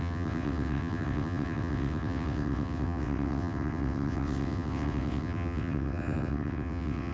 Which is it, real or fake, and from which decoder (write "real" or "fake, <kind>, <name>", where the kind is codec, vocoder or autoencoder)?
fake, vocoder, WaveNeXt